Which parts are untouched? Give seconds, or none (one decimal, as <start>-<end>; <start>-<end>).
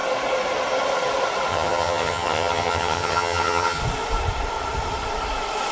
0.0-1.5; 3.8-5.7